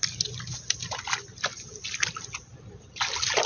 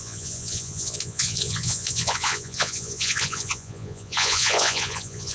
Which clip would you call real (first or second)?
first